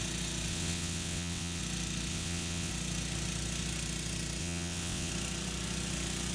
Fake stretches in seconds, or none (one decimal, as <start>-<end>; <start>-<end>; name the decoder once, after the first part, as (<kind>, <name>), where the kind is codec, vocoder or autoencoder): 0.5-1.6 (vocoder, WaveNeXt); 2.1-2.7; 4.4-5.1